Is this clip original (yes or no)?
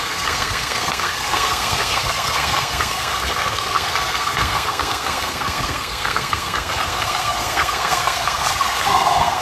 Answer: no